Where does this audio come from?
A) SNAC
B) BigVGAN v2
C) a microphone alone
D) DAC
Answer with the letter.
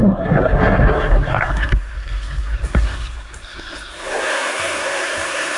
A